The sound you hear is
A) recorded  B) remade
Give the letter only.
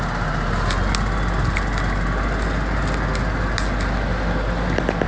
A